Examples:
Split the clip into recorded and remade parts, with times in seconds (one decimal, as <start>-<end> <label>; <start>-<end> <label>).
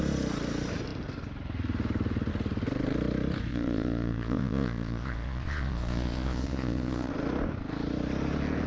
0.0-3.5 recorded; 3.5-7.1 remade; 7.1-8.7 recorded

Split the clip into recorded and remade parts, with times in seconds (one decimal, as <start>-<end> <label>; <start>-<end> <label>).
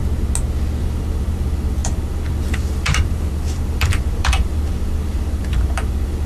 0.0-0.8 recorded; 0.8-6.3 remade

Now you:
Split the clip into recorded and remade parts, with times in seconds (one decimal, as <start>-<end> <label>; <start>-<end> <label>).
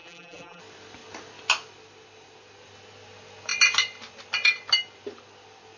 0.0-0.6 remade; 0.6-5.8 recorded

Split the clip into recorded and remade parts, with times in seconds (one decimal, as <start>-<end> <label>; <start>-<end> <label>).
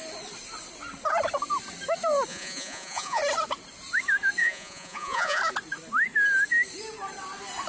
0.0-2.3 recorded; 2.3-3.2 remade; 3.2-4.4 recorded; 4.4-5.4 remade; 5.4-7.7 recorded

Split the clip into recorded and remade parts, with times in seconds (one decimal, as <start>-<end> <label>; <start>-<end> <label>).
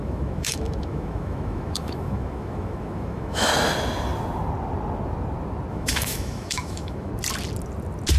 0.0-3.5 remade; 3.5-5.7 recorded; 5.7-7.1 remade; 7.1-8.2 recorded